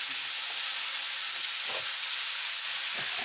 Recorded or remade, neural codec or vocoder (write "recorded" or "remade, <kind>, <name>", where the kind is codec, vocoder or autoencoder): recorded